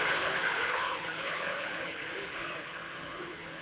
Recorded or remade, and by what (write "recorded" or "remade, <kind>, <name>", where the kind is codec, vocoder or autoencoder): remade, codec, HILCodec